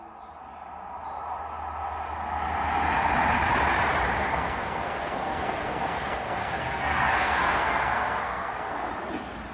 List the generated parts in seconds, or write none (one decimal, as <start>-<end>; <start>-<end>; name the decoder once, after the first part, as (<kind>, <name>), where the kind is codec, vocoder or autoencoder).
4.2-8.9 (codec, SNAC)